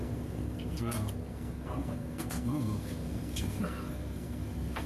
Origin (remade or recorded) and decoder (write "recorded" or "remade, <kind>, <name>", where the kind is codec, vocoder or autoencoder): remade, codec, SNAC